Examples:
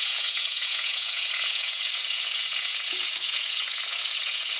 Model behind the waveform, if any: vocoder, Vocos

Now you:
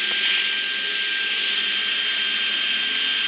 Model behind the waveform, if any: none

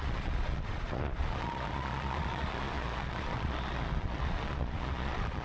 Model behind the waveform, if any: vocoder, Vocos